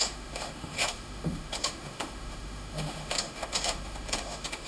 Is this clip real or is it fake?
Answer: fake